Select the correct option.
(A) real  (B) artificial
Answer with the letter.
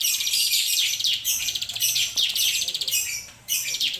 B